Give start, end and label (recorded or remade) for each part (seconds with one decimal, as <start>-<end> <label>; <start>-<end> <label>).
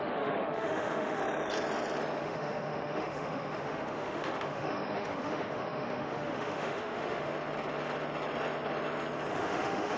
0.0-1.2 remade; 1.2-2.2 recorded; 2.2-7.3 remade; 7.3-9.3 recorded; 9.3-10.0 remade